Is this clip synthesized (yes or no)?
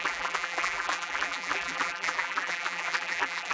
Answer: yes